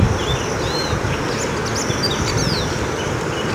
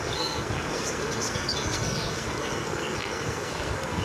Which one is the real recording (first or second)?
first